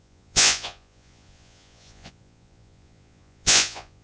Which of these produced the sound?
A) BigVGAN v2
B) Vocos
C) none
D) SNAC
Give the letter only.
B